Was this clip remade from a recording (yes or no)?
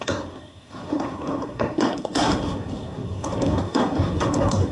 yes